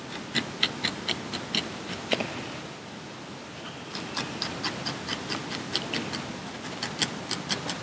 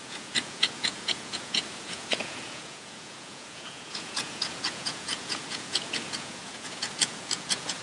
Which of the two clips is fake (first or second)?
second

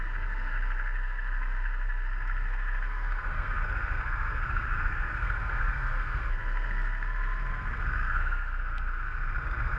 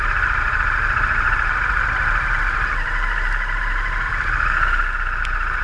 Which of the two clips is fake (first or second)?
first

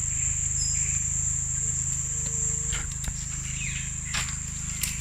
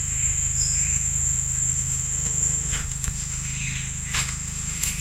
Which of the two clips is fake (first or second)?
second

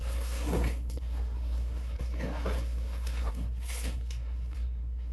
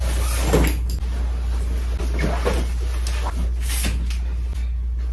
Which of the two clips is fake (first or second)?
first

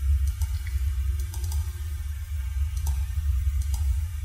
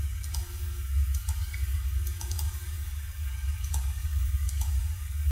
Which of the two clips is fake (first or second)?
second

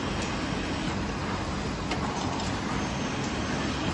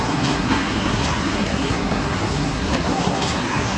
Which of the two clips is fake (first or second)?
second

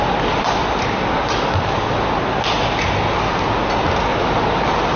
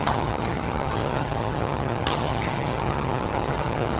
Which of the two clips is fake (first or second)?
second